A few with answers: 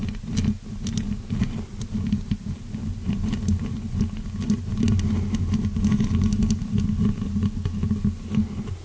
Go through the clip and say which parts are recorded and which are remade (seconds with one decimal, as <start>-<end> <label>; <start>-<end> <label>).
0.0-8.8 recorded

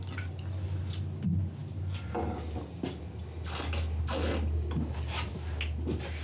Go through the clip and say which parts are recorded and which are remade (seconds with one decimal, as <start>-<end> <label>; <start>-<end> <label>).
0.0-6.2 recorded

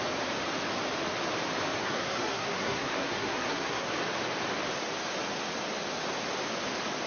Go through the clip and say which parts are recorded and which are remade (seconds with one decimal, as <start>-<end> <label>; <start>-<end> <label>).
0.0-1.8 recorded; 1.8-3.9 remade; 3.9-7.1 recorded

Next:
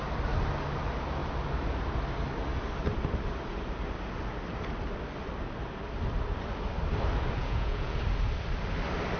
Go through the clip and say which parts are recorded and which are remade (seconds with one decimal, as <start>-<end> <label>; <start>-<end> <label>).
0.0-7.4 recorded; 7.4-8.0 remade; 8.0-9.2 recorded

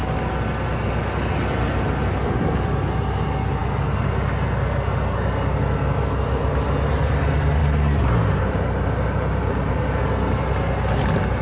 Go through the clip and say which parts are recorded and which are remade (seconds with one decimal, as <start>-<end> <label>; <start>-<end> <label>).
0.0-11.4 recorded